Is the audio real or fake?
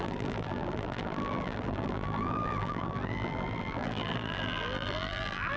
fake